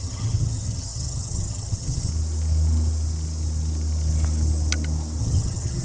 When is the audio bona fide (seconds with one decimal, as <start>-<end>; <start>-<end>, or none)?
2.1-5.2